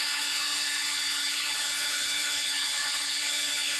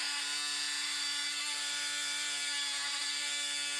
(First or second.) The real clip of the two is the second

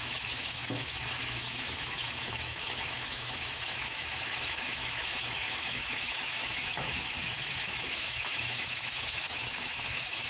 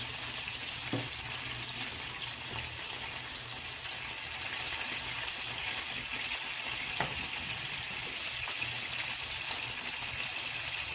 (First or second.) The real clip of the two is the second